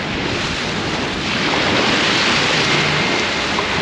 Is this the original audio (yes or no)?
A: yes